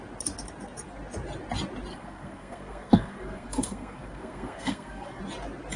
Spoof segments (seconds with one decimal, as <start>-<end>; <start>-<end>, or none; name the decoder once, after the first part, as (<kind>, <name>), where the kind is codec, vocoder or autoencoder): 1.9-5.2 (codec, SNAC)